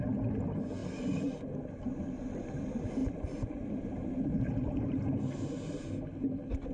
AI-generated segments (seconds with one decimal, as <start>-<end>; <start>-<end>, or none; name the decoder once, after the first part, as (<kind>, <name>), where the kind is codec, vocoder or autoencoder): 0.8-1.4 (vocoder, BigVGAN v2); 3.0-5.4